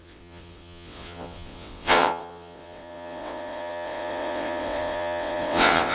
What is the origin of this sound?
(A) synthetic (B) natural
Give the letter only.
A